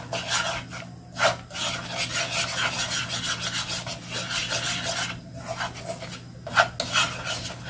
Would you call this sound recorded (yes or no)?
yes